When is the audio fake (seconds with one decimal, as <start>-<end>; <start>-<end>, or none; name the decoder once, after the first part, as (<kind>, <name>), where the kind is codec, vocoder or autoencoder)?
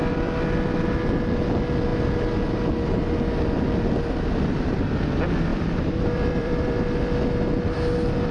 5.5-6.8 (vocoder, BigVGAN v2)